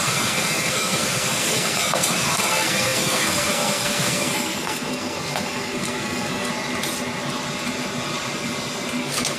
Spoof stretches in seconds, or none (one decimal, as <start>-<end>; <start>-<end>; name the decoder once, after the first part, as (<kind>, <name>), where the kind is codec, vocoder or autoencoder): 0.0-6.5 (codec, SNAC); 9.0-9.4